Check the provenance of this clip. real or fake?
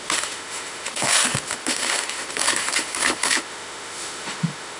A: fake